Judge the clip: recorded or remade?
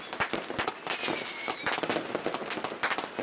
recorded